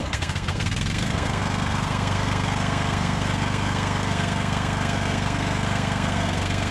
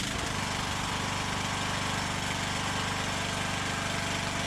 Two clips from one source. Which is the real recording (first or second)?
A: second